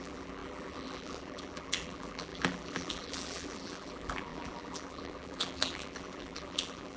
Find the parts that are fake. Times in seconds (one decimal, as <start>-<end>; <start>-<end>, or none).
0.0-7.0